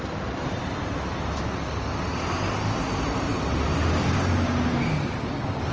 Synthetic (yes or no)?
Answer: no